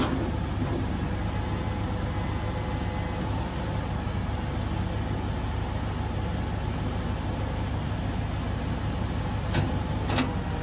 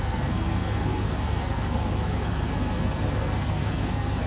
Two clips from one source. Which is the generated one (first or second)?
second